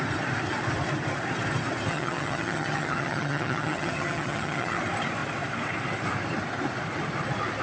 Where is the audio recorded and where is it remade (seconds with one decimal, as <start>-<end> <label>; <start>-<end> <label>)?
0.0-1.9 recorded; 1.9-4.8 remade; 4.8-7.6 recorded